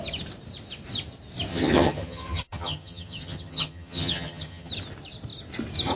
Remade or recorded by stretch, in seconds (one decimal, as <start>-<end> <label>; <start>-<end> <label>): 0.0-1.5 recorded; 1.5-4.7 remade; 4.7-6.0 recorded